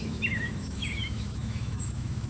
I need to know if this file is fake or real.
fake